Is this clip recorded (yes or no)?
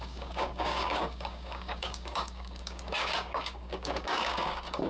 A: no